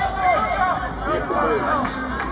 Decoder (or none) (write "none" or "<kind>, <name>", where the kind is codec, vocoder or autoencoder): none